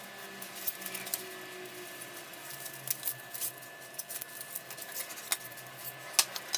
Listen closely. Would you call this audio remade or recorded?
recorded